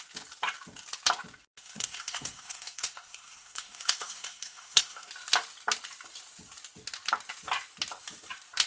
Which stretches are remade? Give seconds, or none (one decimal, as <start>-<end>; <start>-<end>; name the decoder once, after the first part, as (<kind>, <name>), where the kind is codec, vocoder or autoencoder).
1.4-5.1 (codec, SNAC)